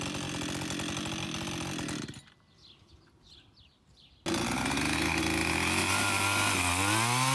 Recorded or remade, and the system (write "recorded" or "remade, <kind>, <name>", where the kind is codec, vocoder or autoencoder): recorded